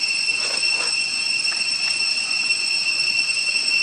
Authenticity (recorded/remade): remade